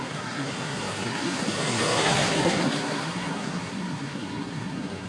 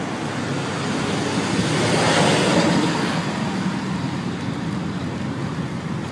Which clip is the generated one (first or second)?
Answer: first